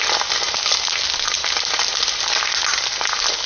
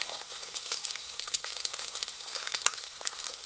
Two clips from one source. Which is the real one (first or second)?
first